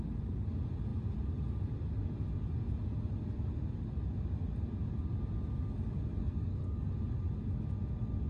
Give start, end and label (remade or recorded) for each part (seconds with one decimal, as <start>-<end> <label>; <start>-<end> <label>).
0.0-6.2 recorded; 6.2-6.9 remade; 6.9-8.3 recorded